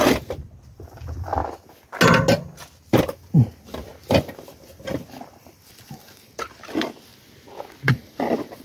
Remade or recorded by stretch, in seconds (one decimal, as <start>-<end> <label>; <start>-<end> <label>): 0.0-1.4 remade; 1.4-3.0 recorded; 3.0-7.1 remade; 7.1-7.9 recorded; 7.9-8.6 remade